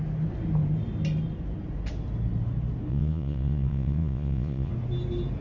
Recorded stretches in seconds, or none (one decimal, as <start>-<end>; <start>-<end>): 0.0-2.9; 4.7-5.4